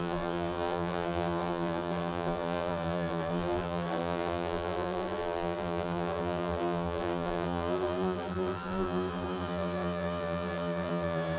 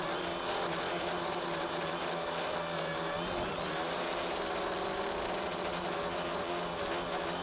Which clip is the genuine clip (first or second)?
second